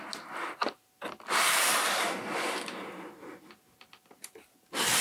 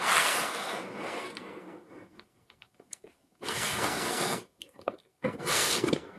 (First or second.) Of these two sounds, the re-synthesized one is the second